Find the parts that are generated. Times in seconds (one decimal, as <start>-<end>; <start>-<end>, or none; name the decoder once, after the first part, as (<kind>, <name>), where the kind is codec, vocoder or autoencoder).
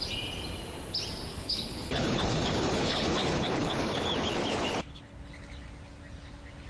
1.3-5.3 (codec, HILCodec)